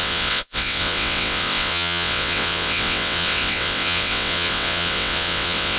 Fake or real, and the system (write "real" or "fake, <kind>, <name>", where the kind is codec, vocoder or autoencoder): fake, vocoder, WaveNeXt